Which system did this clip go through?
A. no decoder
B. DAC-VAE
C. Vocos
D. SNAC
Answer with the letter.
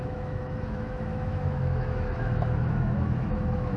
B